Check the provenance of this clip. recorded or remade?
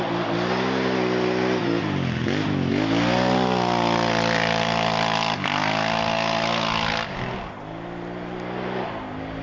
recorded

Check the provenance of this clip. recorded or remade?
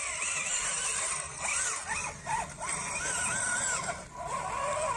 remade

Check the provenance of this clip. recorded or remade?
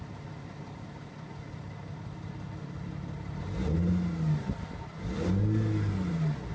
recorded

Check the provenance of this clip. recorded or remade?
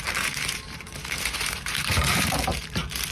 remade